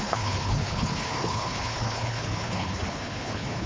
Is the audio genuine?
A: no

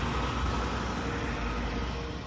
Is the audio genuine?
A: yes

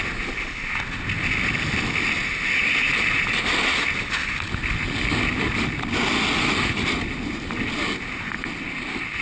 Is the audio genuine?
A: yes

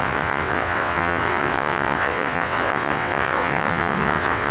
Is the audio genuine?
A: no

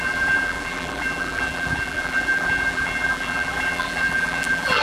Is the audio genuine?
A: no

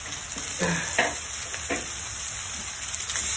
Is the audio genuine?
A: yes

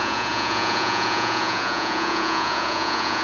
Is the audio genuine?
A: no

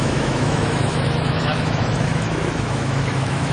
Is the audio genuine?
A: no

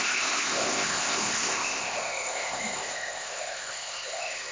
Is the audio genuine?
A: no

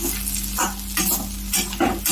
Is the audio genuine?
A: yes